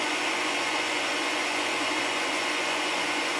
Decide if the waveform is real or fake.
fake